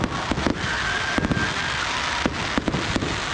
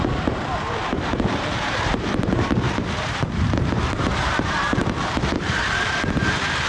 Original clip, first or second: first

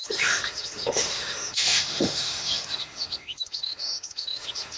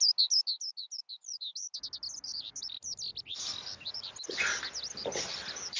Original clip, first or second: second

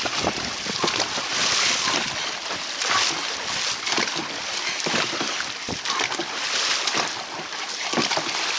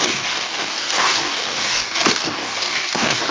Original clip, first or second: first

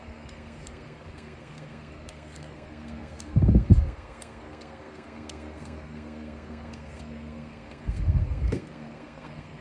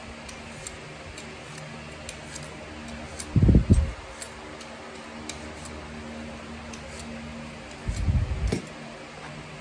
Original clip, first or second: second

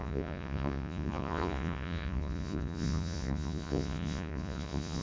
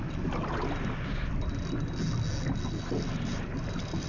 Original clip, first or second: second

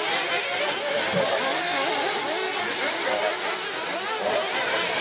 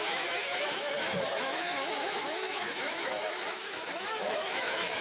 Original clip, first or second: first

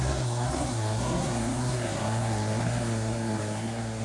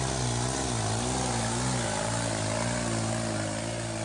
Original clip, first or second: second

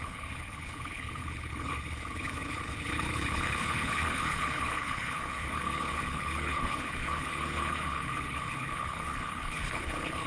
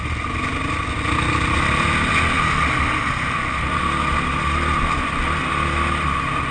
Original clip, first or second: second